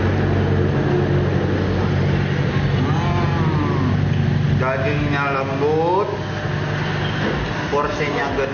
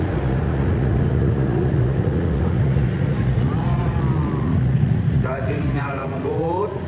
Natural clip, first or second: first